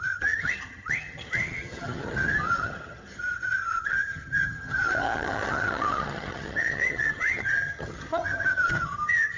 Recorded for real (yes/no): no